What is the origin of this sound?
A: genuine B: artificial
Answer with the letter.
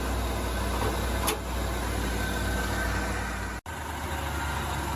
A